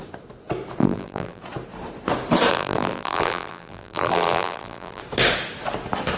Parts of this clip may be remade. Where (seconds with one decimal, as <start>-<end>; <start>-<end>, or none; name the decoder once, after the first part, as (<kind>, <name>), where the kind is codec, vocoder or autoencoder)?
0.8-1.4 (vocoder, BigVGAN v2); 2.5-5.0